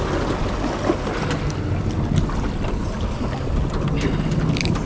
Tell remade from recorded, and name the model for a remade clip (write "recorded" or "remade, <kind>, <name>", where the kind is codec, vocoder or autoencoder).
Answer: recorded